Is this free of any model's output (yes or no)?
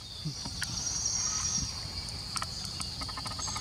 yes